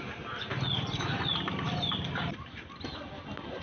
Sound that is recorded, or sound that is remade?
recorded